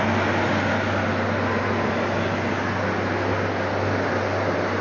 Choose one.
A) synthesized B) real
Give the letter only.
B